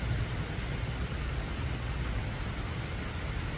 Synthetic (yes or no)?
no